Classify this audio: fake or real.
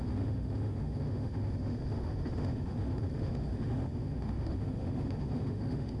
fake